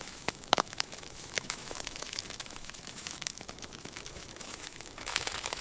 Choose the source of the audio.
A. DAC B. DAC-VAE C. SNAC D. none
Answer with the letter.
B